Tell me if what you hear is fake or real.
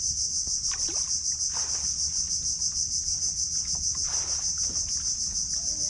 real